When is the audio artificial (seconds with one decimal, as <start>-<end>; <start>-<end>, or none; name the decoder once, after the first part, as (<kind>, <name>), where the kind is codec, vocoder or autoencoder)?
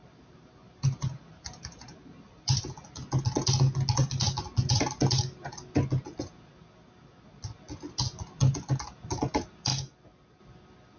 0.0-2.7 (vocoder, BigVGAN v2)